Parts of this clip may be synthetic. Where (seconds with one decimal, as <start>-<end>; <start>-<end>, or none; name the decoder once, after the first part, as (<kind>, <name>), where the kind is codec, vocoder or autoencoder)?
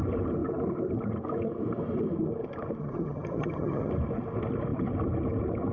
2.8-3.9 (vocoder, HiFi-GAN)